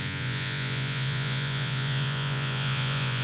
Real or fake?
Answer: fake